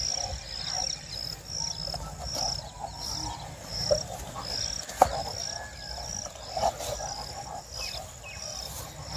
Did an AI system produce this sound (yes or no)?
no